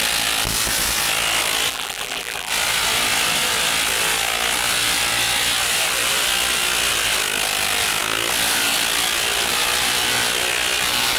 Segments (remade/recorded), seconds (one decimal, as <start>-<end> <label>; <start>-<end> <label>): 0.0-1.7 recorded; 1.7-2.5 remade; 2.5-11.2 recorded